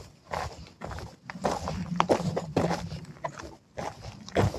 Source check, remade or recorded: recorded